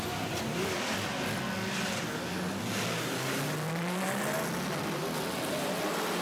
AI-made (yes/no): no